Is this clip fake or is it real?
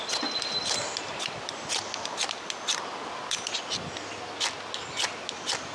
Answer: real